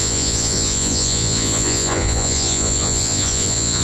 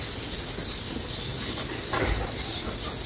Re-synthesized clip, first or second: first